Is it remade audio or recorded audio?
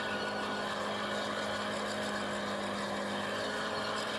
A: recorded